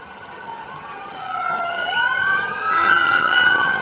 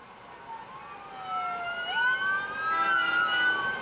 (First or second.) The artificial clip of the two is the first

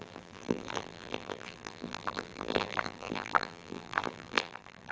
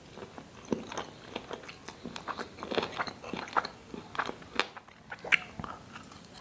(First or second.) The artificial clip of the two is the first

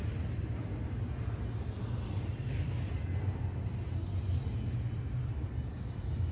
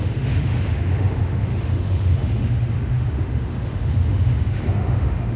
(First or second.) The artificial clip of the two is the second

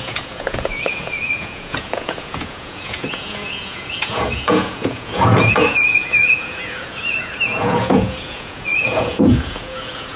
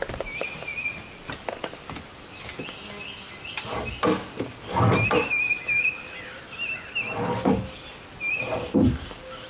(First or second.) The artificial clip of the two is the first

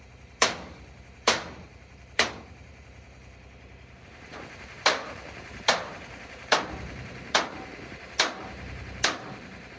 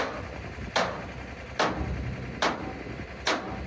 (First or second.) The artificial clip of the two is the first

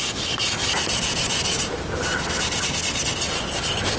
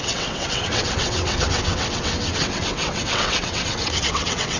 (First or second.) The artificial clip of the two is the second